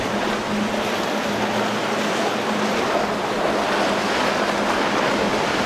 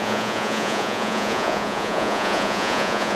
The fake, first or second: second